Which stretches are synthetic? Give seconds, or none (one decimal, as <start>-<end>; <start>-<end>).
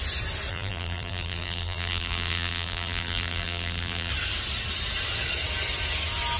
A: 0.5-4.1